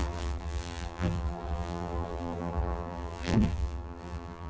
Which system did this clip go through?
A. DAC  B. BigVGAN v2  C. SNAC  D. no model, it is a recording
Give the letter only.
B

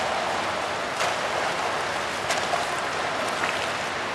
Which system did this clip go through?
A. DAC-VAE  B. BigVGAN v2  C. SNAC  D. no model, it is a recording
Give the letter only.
D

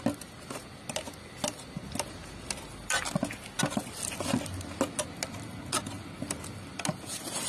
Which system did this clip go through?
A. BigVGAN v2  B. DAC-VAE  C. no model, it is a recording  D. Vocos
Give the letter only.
C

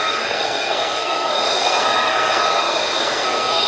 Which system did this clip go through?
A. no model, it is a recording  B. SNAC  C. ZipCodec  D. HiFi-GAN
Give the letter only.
B